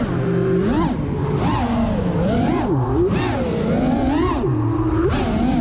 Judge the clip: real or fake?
real